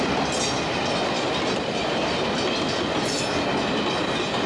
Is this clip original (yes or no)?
yes